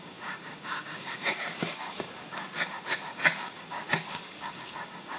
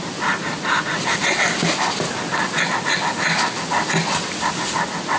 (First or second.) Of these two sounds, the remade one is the first